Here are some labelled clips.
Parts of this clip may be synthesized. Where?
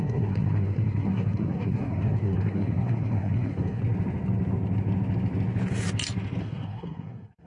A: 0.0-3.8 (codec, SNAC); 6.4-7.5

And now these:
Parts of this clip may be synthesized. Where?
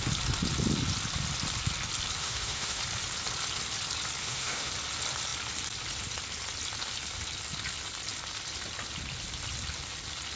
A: 2.2-2.8 (autoencoder, DAC-VAE); 4.2-4.7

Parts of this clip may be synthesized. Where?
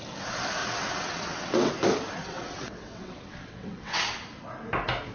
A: 0.6-1.7 (vocoder, WaveNeXt); 2.2-4.2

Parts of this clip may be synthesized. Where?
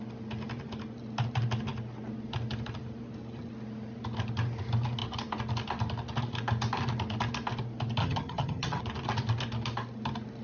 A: 8.0-8.8 (vocoder, HiFi-GAN)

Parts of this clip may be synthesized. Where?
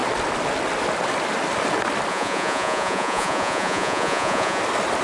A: 2.1-4.6 (vocoder, Vocos)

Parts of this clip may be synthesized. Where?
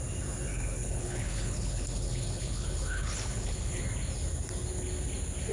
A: 0.5-3.8 (codec, HILCodec)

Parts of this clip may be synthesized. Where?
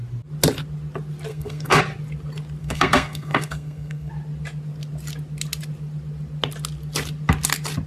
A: 1.3-1.8 (codec, SNAC); 2.6-4.1